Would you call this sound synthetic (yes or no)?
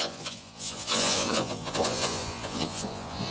yes